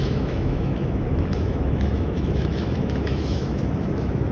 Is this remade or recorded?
remade